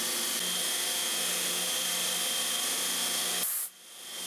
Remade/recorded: recorded